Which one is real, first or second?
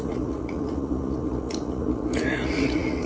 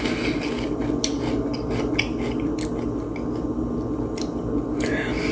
second